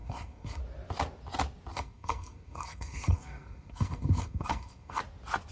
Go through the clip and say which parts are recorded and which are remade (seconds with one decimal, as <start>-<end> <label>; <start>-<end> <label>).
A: 0.0-0.6 remade; 0.6-1.7 recorded; 1.7-5.0 remade; 5.0-5.5 recorded